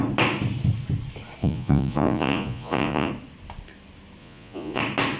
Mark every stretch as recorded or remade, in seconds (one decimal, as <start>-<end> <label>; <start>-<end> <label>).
0.0-1.4 recorded; 1.4-3.1 remade; 3.1-4.2 recorded; 4.2-4.8 remade; 4.8-5.2 recorded